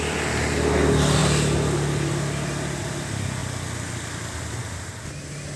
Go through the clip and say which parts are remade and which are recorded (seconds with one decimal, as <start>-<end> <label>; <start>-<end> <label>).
0.0-5.6 recorded